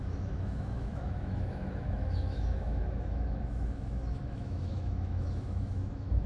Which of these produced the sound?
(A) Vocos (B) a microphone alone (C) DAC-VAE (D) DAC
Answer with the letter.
C